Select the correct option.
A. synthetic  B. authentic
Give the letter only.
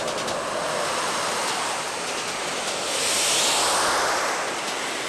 B